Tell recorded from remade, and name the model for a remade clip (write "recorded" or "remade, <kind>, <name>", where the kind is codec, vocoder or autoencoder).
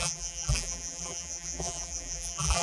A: remade, vocoder, BigVGAN v2